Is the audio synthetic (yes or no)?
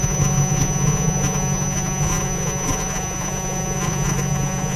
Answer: yes